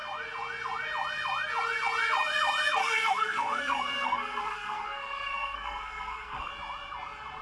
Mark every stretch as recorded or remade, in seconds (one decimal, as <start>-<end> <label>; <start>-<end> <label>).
0.0-2.8 recorded; 2.8-6.5 remade; 6.5-7.4 recorded